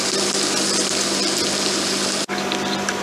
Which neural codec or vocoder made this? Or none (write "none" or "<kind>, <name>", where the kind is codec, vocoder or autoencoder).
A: none